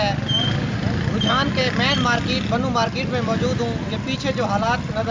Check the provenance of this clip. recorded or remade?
recorded